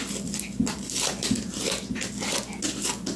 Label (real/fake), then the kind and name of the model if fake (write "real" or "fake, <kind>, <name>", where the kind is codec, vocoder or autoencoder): real